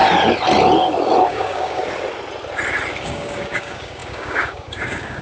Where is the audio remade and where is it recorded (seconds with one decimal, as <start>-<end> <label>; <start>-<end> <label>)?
0.0-1.3 recorded; 1.3-1.8 remade; 1.8-3.0 recorded; 3.0-5.2 remade